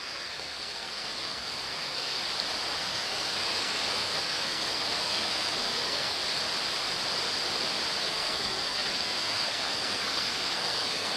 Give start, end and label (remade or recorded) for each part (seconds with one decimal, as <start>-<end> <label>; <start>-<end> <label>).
0.0-2.2 remade; 2.2-2.8 recorded; 2.8-6.2 remade; 6.2-8.0 recorded; 8.0-11.2 remade